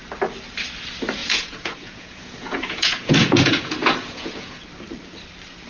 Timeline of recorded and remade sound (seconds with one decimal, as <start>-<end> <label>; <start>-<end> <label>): 0.0-1.2 recorded; 1.2-4.6 remade; 4.6-5.7 recorded